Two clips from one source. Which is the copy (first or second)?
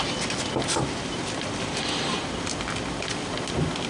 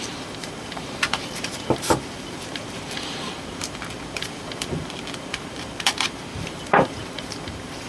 second